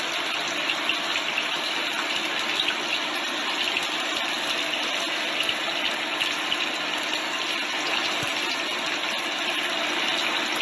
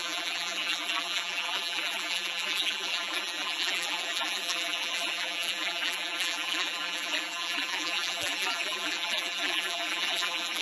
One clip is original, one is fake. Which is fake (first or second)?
second